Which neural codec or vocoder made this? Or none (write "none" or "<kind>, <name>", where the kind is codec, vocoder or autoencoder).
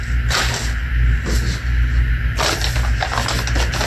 none